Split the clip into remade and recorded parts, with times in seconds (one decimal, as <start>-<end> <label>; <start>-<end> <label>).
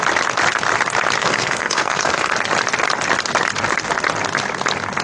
0.0-1.2 recorded; 1.2-2.3 remade; 2.3-5.0 recorded